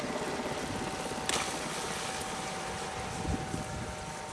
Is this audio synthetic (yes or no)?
no